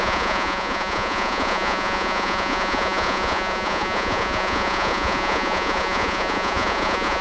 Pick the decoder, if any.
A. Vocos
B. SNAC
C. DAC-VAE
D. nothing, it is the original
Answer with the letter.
A